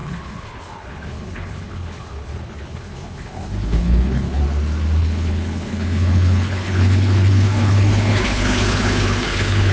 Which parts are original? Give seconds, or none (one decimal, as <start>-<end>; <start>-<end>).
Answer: 4.4-5.0